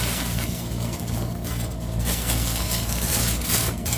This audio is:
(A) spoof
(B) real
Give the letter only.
A